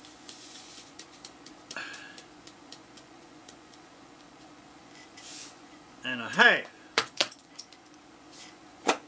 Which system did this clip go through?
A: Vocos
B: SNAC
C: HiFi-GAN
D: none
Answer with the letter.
A